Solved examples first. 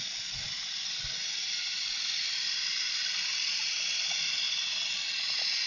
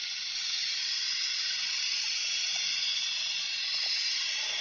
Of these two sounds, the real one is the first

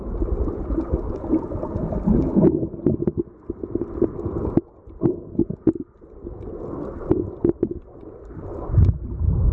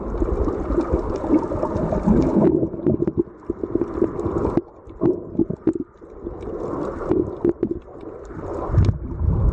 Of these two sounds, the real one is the first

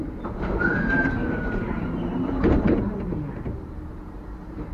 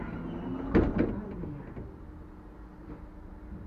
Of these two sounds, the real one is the second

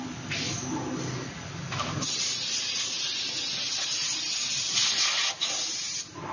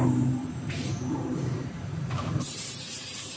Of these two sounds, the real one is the first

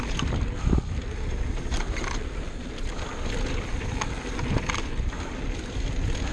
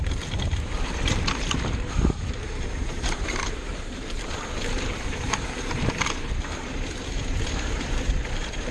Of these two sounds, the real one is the first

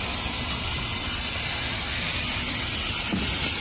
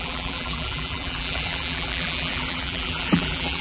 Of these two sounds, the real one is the first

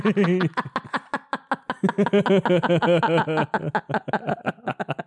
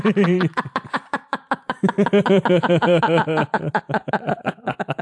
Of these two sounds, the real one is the first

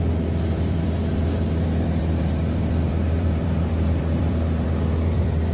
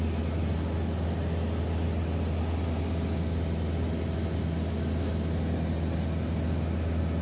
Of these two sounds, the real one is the second